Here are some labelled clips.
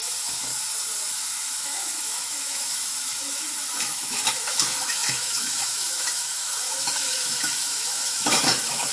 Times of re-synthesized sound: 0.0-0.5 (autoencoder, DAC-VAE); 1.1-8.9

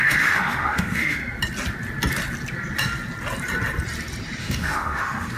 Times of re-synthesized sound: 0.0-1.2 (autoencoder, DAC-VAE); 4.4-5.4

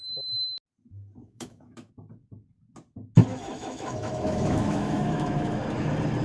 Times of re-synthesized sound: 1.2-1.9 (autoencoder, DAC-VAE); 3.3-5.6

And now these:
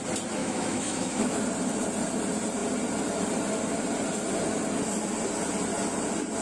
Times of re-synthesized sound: 0.4-1.4 (autoencoder, DAC-VAE)